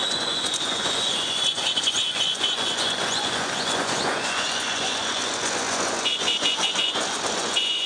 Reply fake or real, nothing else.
fake